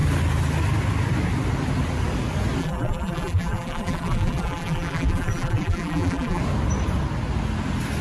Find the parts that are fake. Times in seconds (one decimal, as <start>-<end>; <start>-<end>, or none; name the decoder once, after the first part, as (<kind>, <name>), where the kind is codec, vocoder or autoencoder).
2.6-6.4 (vocoder, BigVGAN v2)